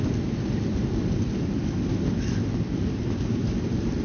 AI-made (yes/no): no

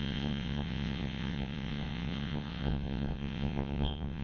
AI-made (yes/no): yes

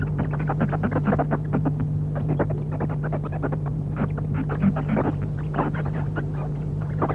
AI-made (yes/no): no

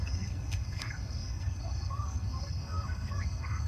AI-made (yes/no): yes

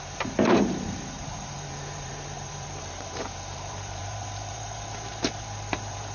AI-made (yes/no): yes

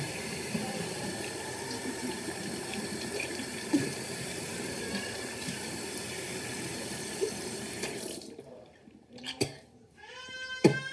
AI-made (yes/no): yes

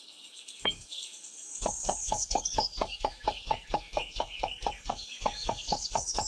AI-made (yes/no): yes